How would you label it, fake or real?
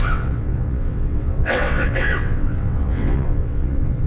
fake